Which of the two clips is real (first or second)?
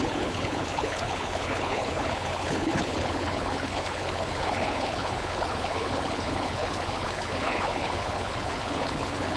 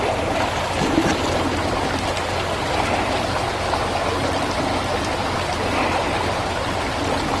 second